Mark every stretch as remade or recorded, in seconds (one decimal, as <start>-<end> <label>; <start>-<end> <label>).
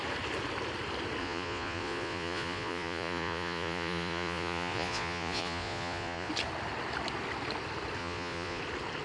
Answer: 0.0-1.2 recorded; 1.2-6.3 remade; 6.3-8.0 recorded; 8.0-8.6 remade; 8.6-9.0 recorded